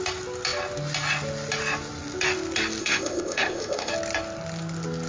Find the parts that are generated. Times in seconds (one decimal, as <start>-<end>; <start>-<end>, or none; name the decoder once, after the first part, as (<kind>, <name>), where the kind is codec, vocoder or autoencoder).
2.8-3.9 (codec, ZipCodec)